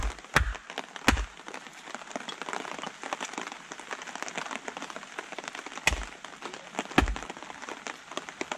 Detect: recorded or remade recorded